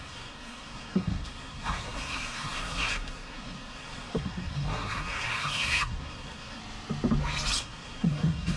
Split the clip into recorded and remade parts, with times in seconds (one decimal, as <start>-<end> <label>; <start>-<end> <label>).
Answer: 0.0-6.6 remade; 6.6-7.6 recorded; 7.6-8.6 remade